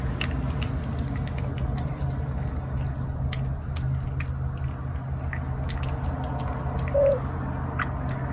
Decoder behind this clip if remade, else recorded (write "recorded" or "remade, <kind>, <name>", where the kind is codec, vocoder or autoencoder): recorded